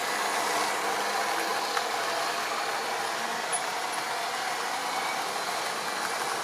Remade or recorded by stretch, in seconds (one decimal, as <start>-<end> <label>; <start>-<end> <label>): 0.0-6.4 recorded